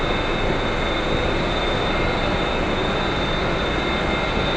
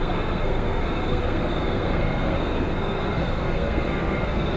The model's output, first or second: second